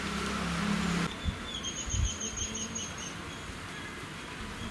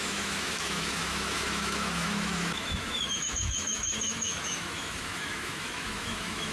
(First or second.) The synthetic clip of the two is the second